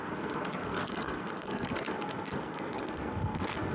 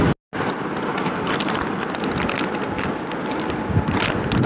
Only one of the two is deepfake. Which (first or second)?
first